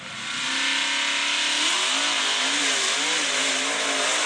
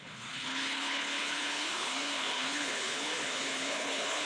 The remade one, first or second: second